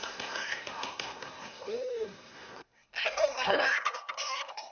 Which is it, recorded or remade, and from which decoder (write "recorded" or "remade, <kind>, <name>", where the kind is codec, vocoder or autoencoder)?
remade, codec, SNAC